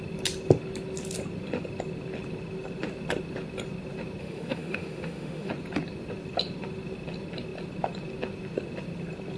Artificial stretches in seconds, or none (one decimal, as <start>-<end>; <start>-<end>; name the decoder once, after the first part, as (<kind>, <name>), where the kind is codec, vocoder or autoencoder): 4.2-5.5 (autoencoder, DAC-VAE)